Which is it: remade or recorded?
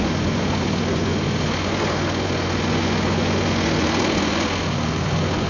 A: remade